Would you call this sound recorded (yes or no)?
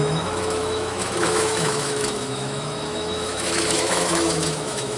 no